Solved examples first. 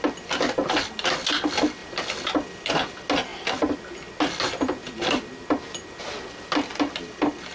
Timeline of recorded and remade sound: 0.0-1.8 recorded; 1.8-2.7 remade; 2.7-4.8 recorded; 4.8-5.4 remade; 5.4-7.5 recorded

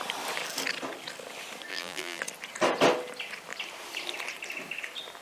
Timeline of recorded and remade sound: 0.0-1.7 recorded; 1.7-2.2 remade; 2.2-5.2 recorded

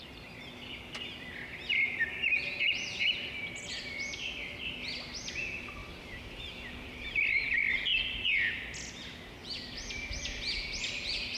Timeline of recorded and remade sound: 0.0-5.8 recorded; 5.8-7.9 remade; 7.9-9.4 recorded; 9.4-10.2 remade; 10.2-11.4 recorded